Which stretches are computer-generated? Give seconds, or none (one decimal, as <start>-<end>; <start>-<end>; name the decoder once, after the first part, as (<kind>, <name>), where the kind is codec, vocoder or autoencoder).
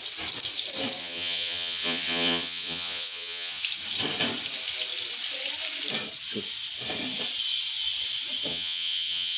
1.0-3.6 (vocoder, Vocos); 8.5-9.4